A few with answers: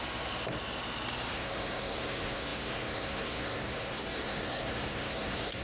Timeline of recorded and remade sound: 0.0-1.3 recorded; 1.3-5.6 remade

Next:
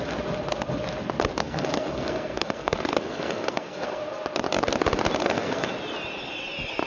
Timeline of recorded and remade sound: 0.0-1.4 recorded; 1.4-4.0 remade; 4.0-5.2 recorded; 5.2-5.7 remade; 5.7-6.9 recorded

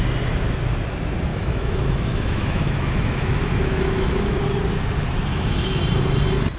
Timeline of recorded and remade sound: 0.0-1.3 recorded; 1.3-4.4 remade; 4.4-5.3 recorded; 5.3-5.8 remade; 5.8-6.6 recorded

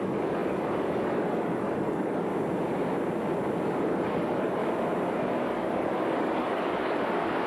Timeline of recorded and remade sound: 0.0-2.3 remade; 2.3-3.8 recorded; 3.8-4.6 remade; 4.6-5.1 recorded; 5.1-7.5 remade

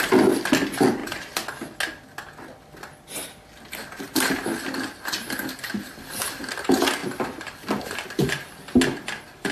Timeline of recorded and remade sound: 0.0-9.5 recorded

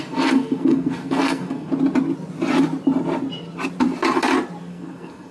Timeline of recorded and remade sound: 0.0-1.7 remade; 1.7-4.6 recorded; 4.6-5.3 remade

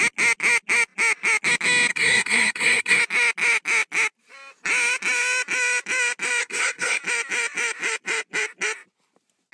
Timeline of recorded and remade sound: 0.0-1.9 recorded; 1.9-3.0 remade; 3.0-6.4 recorded; 6.4-7.0 remade; 7.0-9.5 recorded

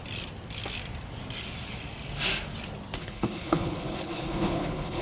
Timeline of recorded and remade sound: 0.0-3.0 recorded; 3.0-5.0 remade